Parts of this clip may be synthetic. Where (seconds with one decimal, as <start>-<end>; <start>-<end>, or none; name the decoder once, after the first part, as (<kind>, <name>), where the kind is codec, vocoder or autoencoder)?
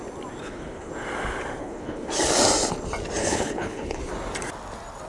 0.4-0.9 (codec, HILCodec); 1.6-2.1; 3.2-4.0